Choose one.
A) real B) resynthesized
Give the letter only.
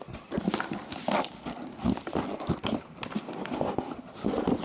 A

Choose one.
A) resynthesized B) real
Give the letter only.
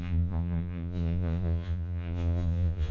A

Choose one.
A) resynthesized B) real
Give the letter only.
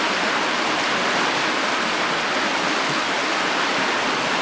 B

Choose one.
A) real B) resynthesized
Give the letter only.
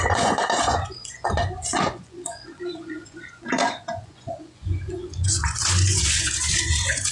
B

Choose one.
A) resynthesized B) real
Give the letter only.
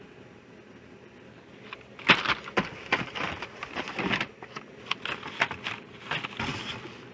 B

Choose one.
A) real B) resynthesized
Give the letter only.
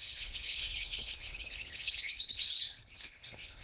B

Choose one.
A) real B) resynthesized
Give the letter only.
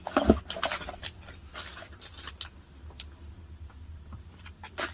A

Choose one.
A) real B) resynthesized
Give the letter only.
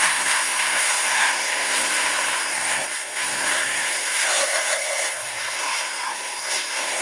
B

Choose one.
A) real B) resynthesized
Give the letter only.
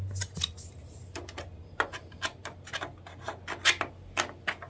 A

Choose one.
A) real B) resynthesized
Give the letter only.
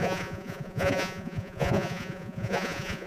B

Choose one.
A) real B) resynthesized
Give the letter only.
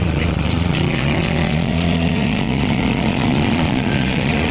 B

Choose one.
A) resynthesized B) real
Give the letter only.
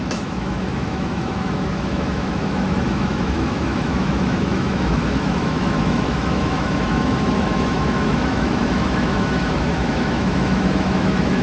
A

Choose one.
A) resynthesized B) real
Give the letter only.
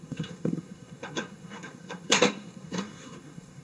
A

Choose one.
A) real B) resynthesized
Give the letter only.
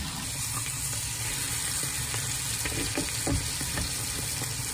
A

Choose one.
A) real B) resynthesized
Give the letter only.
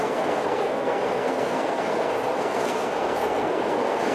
B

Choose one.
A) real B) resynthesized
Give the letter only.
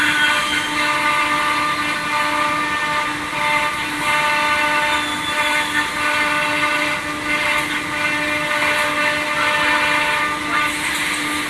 B